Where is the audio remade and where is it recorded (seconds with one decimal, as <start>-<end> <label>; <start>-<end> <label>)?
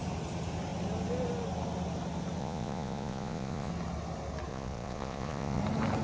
0.0-2.4 recorded; 2.4-3.7 remade; 3.7-4.5 recorded; 4.5-5.6 remade; 5.6-6.0 recorded